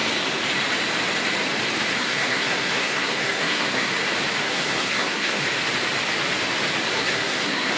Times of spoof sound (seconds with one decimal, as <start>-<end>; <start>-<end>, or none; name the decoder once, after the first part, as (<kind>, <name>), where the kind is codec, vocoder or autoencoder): 2.0-3.9 (codec, SNAC); 4.4-5.4; 6.9-7.8